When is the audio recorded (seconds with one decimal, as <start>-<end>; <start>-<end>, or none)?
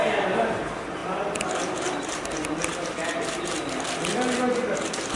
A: 0.6-1.0; 3.8-5.2